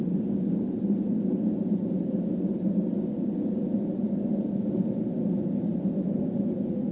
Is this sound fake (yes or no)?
no